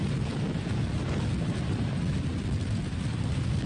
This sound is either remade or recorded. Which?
recorded